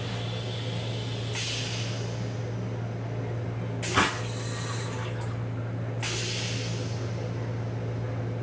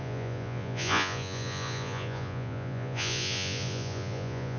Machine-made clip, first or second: second